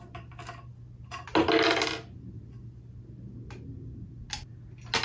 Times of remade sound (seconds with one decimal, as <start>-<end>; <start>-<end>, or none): none